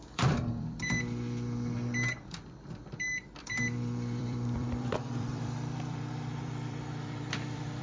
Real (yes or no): no